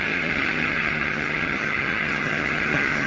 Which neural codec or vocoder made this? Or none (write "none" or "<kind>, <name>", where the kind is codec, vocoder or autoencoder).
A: vocoder, HiFi-GAN